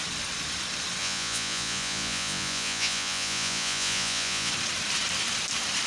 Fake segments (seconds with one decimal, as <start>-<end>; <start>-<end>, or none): 1.0-4.5